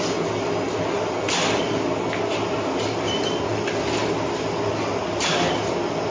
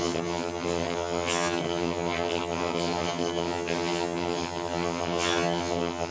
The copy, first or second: second